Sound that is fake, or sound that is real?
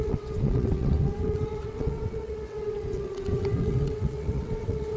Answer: fake